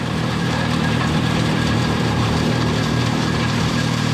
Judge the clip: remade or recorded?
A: remade